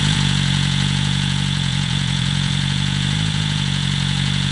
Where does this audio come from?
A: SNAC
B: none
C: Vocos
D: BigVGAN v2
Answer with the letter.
C